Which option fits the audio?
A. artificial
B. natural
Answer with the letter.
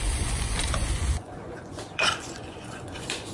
A